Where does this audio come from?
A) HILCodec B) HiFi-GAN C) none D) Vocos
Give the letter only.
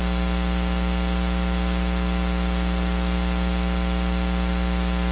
C